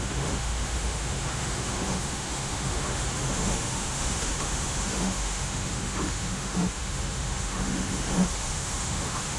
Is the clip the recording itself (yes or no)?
no